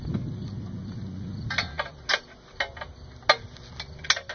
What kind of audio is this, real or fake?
real